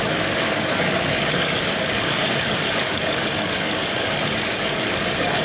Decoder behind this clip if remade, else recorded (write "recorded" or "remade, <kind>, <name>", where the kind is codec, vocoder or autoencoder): remade, codec, DAC